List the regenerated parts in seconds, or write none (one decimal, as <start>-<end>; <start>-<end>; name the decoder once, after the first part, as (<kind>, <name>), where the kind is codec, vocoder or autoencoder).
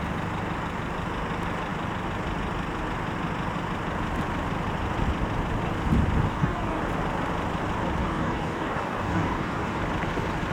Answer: 6.3-6.8 (codec, DAC); 8.0-9.8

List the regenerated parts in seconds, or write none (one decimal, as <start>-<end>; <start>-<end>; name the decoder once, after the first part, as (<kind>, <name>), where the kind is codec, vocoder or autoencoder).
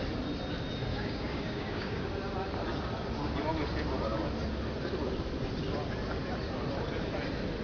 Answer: 0.9-2.0 (codec, DAC)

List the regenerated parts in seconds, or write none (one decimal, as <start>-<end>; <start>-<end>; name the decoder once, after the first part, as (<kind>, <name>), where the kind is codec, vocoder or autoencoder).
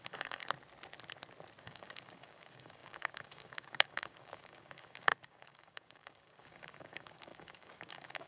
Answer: 0.0-0.4 (codec, DAC); 1.6-8.3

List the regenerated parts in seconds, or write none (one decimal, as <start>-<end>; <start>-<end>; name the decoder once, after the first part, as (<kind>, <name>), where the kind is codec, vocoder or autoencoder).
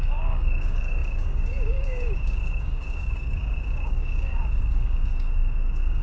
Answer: 0.0-6.0 (codec, DAC)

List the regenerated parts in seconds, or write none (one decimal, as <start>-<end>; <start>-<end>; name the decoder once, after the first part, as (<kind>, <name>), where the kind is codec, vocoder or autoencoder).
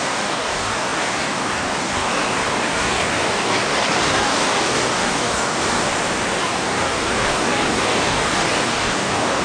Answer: 0.0-5.9 (codec, DAC); 6.4-9.4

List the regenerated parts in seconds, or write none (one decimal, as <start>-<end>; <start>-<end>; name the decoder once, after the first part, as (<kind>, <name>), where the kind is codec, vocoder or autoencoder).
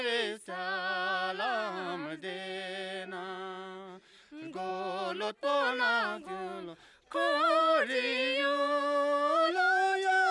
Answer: none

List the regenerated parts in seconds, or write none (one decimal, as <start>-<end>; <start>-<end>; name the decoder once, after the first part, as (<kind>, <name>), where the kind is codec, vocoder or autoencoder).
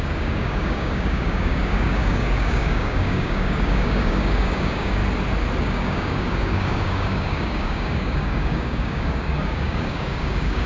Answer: 0.0-5.0 (codec, DAC); 5.6-10.7